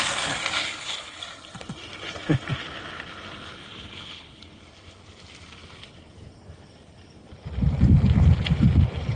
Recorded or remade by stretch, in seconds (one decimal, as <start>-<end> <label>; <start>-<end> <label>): 0.0-0.6 recorded; 0.6-1.2 remade; 1.2-3.6 recorded; 3.6-4.6 remade; 4.6-9.2 recorded